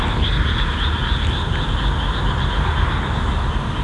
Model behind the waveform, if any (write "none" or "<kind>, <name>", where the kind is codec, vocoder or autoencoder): none